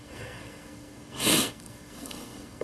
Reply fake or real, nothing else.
fake